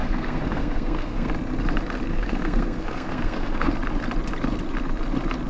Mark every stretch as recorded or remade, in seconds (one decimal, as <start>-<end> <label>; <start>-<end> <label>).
0.0-1.3 remade; 1.3-2.1 recorded; 2.1-3.7 remade; 3.7-5.5 recorded